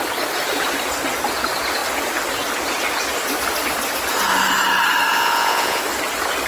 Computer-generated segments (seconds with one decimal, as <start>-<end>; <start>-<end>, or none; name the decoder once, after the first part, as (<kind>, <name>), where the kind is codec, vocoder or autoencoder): 5.1-5.8 (vocoder, Vocos)